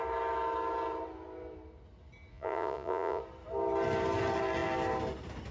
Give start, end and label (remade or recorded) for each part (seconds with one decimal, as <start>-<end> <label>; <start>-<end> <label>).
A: 0.0-2.3 recorded; 2.3-3.2 remade; 3.2-5.5 recorded